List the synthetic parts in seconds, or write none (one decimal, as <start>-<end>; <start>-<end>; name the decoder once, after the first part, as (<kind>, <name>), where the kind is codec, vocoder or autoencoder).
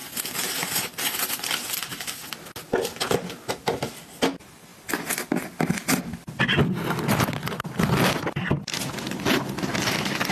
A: none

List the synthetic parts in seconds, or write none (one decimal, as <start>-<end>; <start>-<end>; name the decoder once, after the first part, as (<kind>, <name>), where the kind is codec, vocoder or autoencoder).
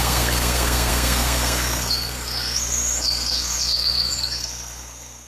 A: 0.0-5.3 (codec, SNAC)